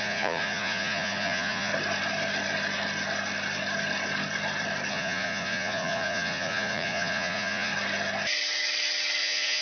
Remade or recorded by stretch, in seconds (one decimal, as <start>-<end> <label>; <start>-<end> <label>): 0.0-1.7 remade; 1.7-4.9 recorded; 4.9-7.7 remade; 7.7-9.2 recorded; 9.2-9.6 remade